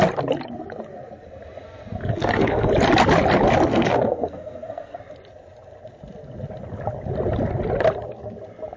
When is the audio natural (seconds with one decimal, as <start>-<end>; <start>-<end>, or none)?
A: 0.0-2.1; 2.7-3.7; 5.0-8.8